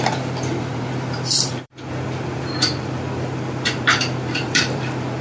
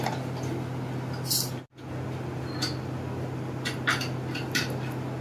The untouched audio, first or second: second